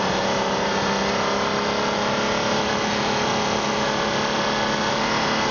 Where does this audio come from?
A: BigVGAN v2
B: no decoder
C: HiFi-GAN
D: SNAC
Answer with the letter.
B